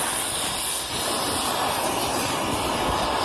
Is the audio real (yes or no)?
yes